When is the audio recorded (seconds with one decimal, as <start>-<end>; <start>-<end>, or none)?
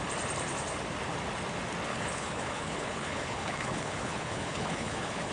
0.0-1.9